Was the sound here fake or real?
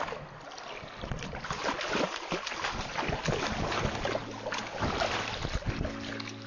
real